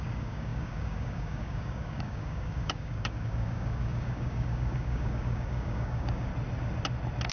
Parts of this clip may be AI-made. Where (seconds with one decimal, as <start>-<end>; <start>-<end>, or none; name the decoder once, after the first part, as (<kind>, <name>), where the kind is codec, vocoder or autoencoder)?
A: 0.0-6.3 (codec, DAC)